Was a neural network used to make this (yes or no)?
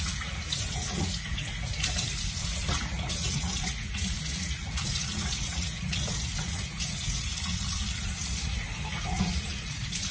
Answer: yes